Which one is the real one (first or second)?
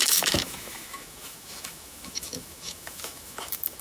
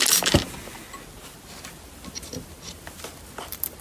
second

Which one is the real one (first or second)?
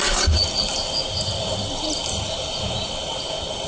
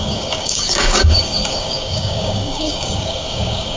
first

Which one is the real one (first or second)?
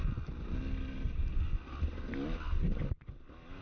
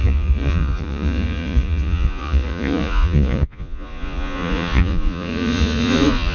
first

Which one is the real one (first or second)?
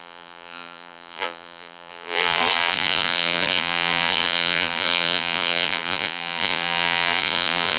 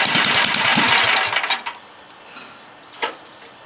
second